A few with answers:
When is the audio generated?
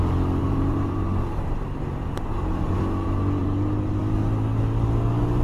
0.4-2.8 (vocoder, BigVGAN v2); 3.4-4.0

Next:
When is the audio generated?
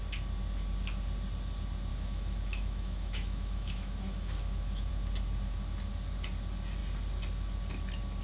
1.9-4.9 (autoencoder, DAC-VAE)